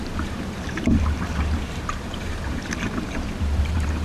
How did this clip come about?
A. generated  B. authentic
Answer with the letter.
A